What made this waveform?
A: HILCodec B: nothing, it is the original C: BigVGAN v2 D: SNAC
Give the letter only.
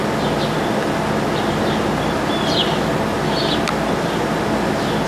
B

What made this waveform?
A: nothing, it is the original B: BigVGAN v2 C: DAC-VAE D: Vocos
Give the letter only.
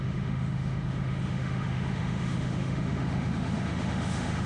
C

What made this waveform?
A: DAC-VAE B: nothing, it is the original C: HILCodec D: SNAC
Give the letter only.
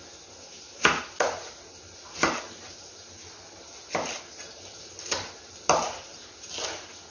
B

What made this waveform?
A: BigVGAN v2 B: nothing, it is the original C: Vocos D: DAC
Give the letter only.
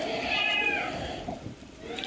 B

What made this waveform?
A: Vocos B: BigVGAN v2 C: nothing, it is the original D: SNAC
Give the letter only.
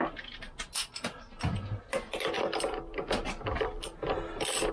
C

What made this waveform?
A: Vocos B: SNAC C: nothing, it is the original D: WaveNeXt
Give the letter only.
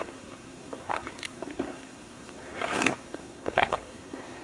B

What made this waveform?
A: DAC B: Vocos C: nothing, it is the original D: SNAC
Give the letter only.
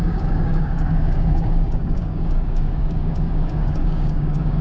A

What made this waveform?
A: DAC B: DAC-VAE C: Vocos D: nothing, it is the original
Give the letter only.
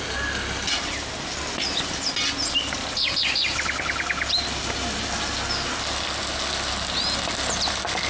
D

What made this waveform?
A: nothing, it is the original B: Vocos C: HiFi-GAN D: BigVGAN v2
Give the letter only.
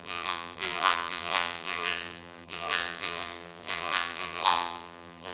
D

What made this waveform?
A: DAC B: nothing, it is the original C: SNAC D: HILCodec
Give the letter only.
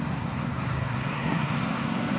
C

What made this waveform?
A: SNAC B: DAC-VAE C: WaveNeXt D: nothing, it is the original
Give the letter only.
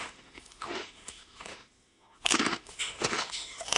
B